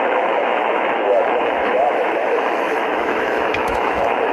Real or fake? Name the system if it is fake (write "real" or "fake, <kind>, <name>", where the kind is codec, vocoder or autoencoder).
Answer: fake, autoencoder, DAC-VAE